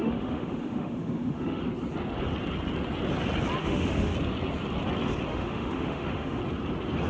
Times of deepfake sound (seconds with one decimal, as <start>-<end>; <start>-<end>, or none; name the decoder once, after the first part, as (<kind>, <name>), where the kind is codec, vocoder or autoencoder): 0.0-1.6 (autoencoder, DAC-VAE); 3.6-4.1; 5.3-6.4